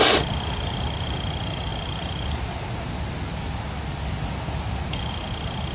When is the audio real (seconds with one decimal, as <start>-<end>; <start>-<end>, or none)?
0.0-5.7